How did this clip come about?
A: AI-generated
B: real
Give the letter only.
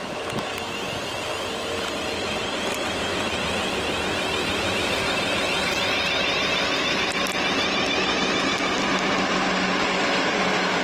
B